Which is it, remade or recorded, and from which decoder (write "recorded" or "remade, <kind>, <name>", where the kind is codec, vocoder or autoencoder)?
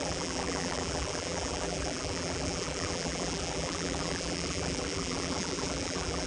remade, vocoder, BigVGAN v2